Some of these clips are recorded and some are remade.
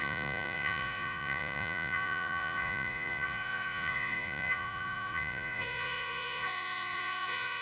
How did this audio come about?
remade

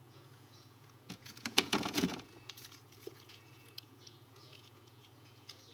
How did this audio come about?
remade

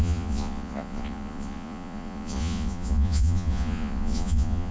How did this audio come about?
remade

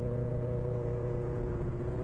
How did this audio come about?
remade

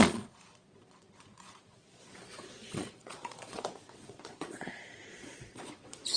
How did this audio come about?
remade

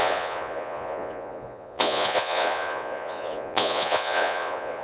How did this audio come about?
remade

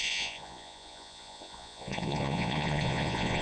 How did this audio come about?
remade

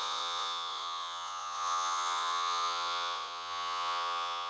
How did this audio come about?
remade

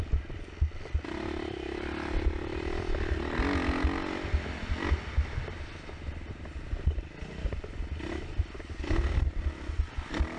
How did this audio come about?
recorded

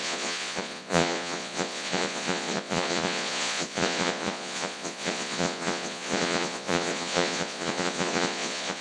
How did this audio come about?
remade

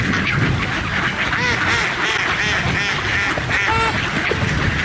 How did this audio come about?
recorded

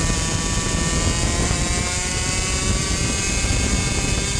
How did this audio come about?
recorded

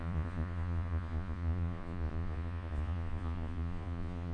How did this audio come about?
remade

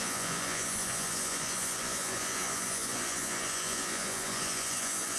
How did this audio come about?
remade